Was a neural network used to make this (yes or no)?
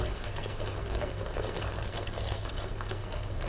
yes